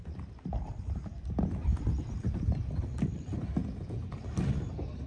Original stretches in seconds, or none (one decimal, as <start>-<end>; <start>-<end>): 0.0-3.6; 4.2-5.1